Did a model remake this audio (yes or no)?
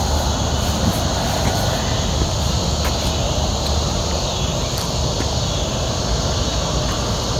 no